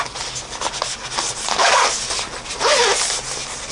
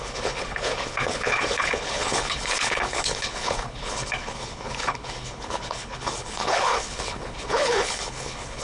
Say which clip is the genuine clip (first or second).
first